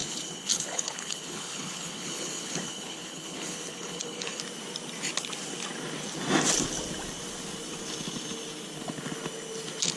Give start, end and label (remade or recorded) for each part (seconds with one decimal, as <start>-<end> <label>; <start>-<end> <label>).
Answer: 0.0-4.4 remade; 4.4-10.0 recorded